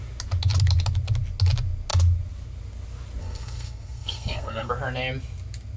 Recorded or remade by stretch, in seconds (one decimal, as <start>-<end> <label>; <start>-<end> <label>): 0.0-3.2 recorded; 3.2-4.7 remade; 4.7-5.8 recorded